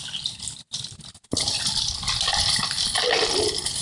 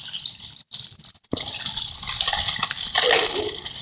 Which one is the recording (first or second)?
first